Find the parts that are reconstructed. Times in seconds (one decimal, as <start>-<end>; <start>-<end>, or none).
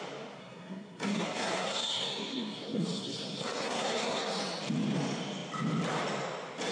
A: 0.4-4.4